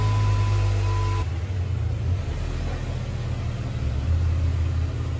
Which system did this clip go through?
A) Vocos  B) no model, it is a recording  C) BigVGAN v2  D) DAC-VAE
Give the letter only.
B